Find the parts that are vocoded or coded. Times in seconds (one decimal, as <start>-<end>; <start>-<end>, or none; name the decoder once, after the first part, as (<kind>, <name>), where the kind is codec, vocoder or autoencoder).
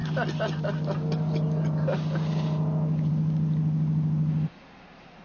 none